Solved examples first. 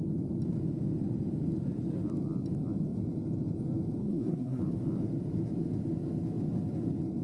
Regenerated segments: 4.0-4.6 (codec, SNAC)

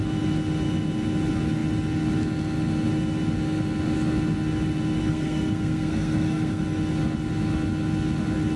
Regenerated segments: 5.1-6.6 (codec, SNAC)

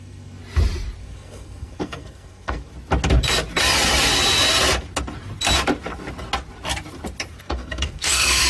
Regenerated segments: 0.0-0.4 (codec, SNAC); 1.0-2.7; 7.4-8.5

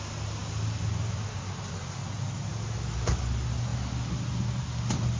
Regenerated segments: none

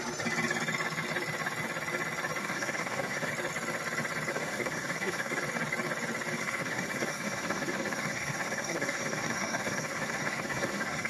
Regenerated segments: 2.4-3.3 (codec, SNAC); 4.3-5.4; 6.4-11.1

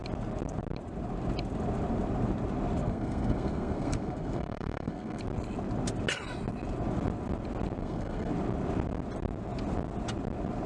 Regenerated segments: 2.8-5.2 (codec, SNAC); 7.8-8.3

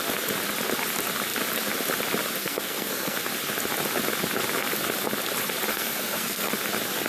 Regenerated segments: 2.4-3.3 (codec, SNAC); 5.7-6.5

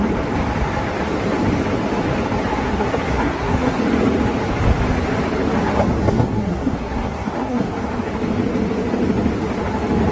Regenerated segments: 2.6-3.8 (codec, SNAC); 6.0-7.7